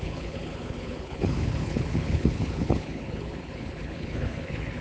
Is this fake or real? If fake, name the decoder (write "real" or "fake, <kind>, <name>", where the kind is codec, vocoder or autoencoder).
fake, codec, HILCodec